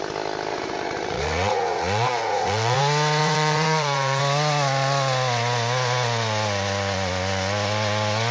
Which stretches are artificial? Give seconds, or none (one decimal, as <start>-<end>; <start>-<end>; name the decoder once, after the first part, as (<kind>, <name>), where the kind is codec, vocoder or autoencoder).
0.5-2.8 (vocoder, Vocos); 3.2-4.2